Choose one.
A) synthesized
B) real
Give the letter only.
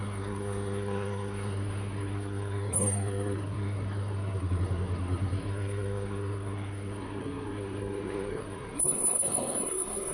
A